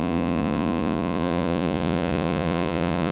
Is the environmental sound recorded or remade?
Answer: remade